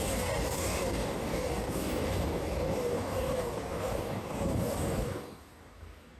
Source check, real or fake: fake